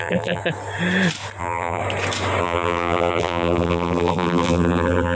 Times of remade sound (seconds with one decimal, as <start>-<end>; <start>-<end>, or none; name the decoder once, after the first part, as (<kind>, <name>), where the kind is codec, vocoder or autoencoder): 0.0-0.4 (vocoder, BigVGAN v2); 1.4-1.8; 2.4-5.1